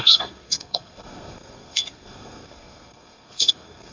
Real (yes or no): no